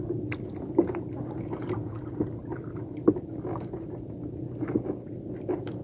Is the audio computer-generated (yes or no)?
no